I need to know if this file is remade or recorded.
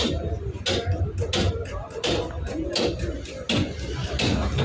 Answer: recorded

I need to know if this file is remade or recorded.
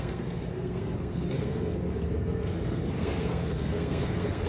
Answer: remade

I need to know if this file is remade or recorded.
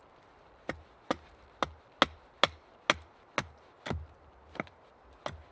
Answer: recorded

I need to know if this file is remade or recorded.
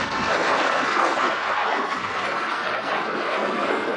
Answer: remade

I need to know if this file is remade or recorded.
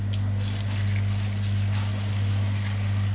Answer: recorded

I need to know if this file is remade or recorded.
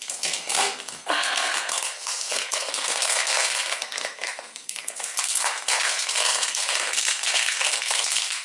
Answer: remade